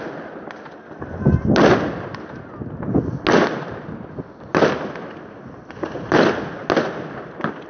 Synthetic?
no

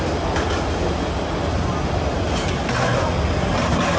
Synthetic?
no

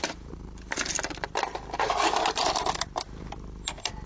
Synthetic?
yes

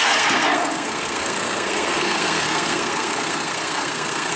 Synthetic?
yes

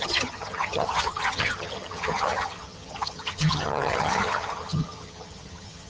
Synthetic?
yes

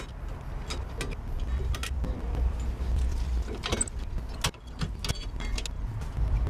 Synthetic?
no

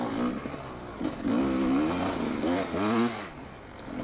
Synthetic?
no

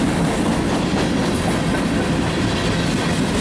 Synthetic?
no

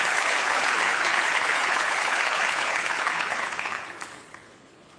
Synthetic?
yes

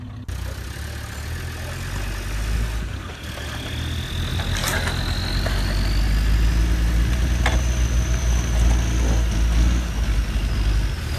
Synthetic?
no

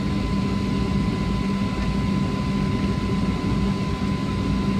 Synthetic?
no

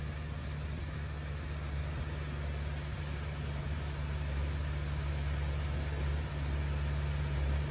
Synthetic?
no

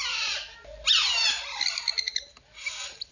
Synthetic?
no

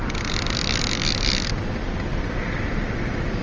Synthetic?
no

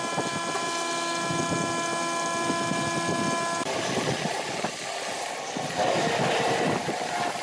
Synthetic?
no